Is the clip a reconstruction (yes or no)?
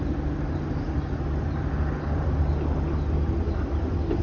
no